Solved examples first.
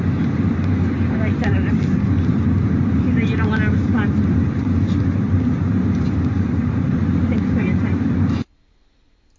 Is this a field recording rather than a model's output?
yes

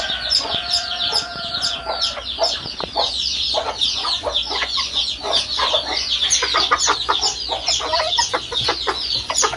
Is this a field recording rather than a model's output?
no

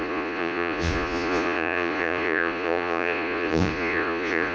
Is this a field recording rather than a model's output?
no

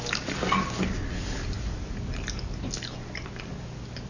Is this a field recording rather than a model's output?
yes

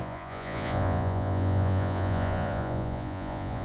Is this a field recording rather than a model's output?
no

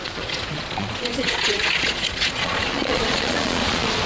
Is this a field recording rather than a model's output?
no